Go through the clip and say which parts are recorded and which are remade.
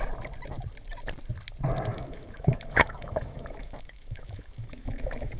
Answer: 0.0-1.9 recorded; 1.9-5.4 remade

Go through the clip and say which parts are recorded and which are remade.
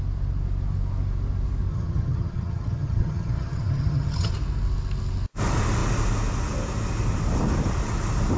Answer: 0.0-1.7 recorded; 1.7-4.3 remade; 4.3-8.4 recorded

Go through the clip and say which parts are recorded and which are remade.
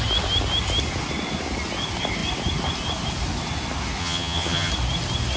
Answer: 0.0-4.0 recorded; 4.0-4.7 remade; 4.7-5.4 recorded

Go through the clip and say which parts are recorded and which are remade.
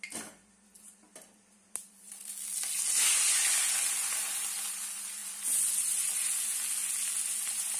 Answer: 0.0-7.8 recorded